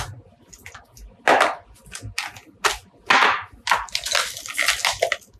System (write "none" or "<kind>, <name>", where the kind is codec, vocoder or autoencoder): none